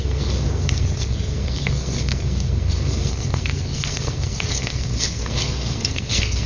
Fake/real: fake